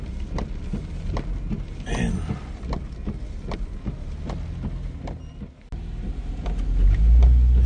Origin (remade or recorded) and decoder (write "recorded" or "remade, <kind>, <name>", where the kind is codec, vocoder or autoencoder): recorded